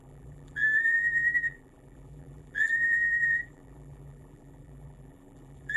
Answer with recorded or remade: remade